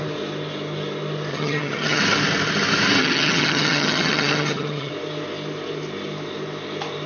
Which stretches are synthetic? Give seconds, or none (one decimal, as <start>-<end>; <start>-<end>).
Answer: 1.3-2.0; 3.0-4.9